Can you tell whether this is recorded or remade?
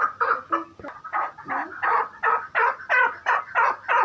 recorded